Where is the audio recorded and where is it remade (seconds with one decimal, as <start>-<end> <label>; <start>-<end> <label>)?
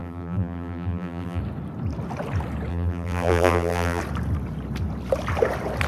0.0-1.4 remade; 1.4-2.7 recorded; 2.7-4.0 remade; 4.0-5.9 recorded